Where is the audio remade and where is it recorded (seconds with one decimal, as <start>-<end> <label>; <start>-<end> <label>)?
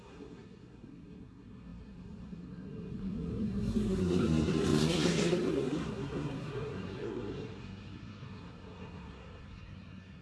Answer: 0.0-10.2 remade